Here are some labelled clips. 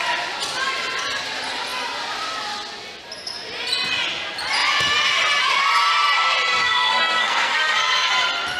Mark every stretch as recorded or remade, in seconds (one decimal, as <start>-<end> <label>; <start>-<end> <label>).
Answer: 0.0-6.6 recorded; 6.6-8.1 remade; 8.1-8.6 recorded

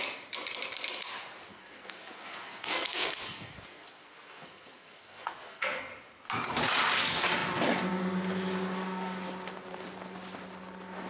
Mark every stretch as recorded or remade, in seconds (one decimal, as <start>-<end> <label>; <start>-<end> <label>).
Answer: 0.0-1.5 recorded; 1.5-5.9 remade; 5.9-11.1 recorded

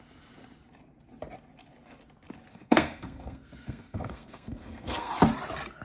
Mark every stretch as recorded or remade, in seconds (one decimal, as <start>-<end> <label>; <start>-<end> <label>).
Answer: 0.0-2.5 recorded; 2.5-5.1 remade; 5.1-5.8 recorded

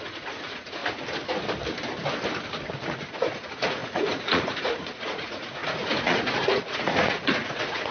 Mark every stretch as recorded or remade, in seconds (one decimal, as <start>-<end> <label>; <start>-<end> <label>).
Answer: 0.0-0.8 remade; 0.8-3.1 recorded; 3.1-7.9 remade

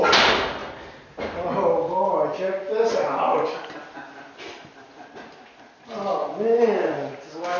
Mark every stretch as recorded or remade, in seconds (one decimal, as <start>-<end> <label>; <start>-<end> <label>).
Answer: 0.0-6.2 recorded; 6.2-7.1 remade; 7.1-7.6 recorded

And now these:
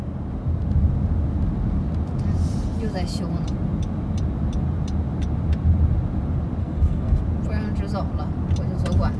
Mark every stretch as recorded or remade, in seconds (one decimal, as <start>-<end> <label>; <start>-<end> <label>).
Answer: 0.0-6.6 recorded; 6.6-7.2 remade; 7.2-9.2 recorded

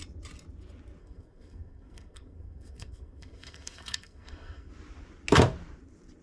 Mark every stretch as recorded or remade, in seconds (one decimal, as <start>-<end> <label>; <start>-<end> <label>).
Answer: 0.0-1.0 recorded; 1.0-4.7 remade; 4.7-6.2 recorded

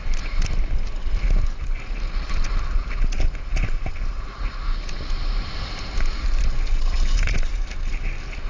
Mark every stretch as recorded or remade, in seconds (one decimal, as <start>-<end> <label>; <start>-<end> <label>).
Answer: 0.0-8.5 recorded